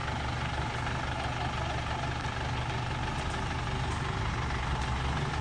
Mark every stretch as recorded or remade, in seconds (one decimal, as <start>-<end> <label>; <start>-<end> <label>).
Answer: 0.0-5.4 recorded